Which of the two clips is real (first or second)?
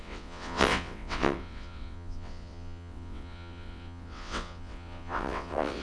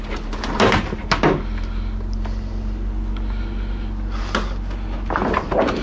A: second